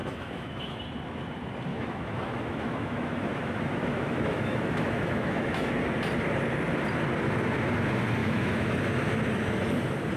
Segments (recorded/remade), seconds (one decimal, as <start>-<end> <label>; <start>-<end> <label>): 0.0-0.8 remade; 0.8-1.7 recorded; 1.7-5.7 remade; 5.7-8.2 recorded; 8.2-8.7 remade; 8.7-10.2 recorded